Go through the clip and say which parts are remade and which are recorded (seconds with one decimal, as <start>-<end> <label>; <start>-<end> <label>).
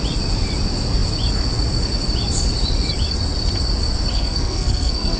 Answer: 0.0-4.1 recorded; 4.1-5.2 remade